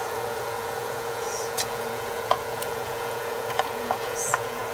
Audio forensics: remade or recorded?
remade